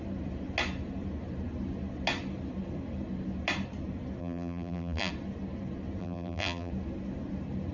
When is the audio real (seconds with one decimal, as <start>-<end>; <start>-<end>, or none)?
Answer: 0.0-4.2; 5.1-6.0; 6.7-7.7